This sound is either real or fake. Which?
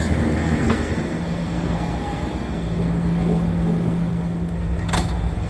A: fake